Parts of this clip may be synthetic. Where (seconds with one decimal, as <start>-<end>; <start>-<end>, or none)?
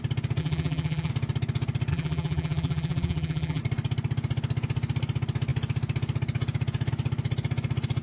0.4-1.1; 1.9-3.6